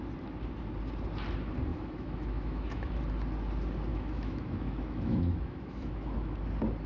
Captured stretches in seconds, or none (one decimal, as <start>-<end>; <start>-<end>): 0.0-1.7; 3.0-3.9; 6.4-6.9